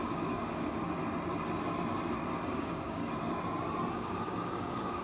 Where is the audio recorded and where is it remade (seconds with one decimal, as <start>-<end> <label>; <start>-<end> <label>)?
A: 0.0-1.0 remade; 1.0-2.5 recorded; 2.5-3.0 remade; 3.0-3.9 recorded; 3.9-5.0 remade